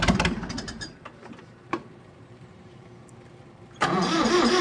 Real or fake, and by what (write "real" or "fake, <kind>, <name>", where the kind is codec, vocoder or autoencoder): fake, vocoder, BigVGAN v2